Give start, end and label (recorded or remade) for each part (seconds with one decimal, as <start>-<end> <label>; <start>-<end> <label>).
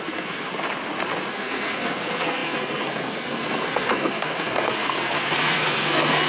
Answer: 0.0-0.5 remade; 0.5-1.3 recorded; 1.3-6.3 remade